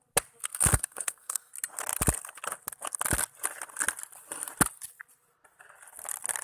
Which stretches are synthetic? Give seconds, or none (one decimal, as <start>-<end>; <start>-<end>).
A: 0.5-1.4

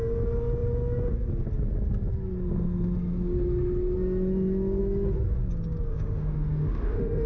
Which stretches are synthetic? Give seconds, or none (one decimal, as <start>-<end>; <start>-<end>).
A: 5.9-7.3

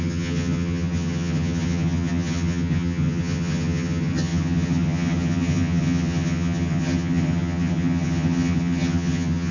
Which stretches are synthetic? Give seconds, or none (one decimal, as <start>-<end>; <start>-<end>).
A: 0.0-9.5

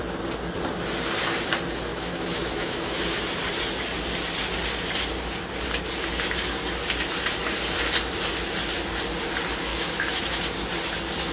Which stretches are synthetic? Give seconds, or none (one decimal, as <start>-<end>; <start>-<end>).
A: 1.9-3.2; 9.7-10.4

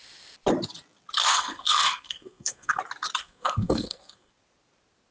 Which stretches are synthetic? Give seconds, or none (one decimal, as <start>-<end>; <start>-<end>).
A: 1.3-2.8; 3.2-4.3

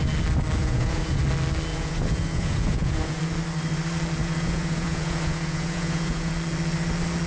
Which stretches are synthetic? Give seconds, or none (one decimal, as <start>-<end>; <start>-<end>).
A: 0.6-1.2; 1.7-3.2; 4.2-6.3

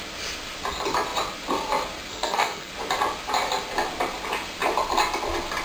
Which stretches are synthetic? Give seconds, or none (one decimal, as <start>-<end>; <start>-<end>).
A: 2.1-2.7